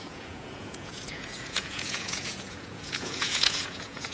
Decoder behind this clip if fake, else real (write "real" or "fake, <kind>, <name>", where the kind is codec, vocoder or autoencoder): fake, vocoder, Vocos